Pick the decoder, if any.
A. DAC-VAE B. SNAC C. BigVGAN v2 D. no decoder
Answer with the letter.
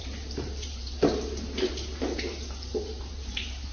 C